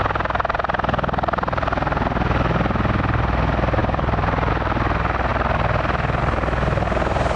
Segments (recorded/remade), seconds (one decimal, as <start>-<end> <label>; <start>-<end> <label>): 0.0-3.8 recorded; 3.8-4.5 remade; 4.5-7.4 recorded